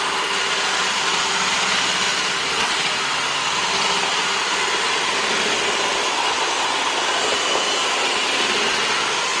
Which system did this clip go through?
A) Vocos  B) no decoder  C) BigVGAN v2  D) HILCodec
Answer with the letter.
B